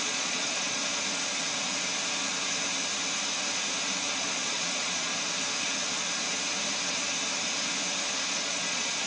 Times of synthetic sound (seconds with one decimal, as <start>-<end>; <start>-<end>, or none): 0.0-0.8; 4.2-5.1; 8.3-9.1